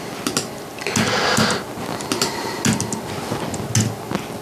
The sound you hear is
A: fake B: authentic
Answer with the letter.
B